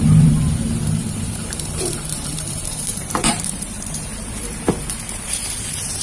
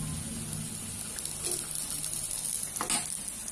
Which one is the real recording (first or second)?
second